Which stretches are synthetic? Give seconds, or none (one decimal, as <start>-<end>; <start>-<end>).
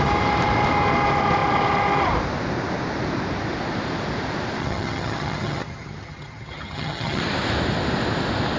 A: 4.6-7.2